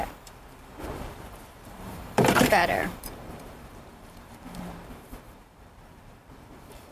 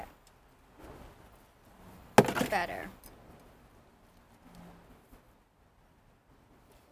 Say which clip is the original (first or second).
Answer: second